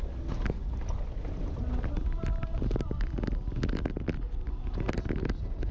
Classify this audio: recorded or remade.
recorded